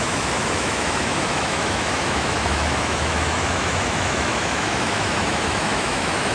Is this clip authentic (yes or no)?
no